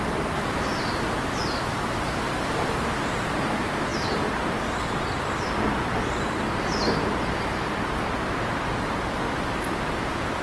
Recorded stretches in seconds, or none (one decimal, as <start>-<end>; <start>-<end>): 0.7-2.0